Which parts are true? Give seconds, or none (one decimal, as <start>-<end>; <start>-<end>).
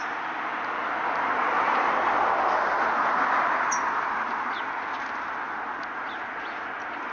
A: 0.0-7.1